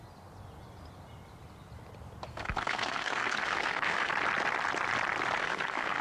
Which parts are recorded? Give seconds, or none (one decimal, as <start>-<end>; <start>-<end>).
0.0-2.3; 4.1-5.4